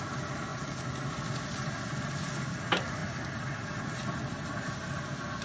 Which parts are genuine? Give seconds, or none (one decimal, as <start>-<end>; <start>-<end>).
0.0-5.4